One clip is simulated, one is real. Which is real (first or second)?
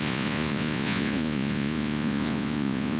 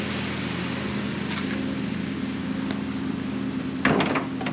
second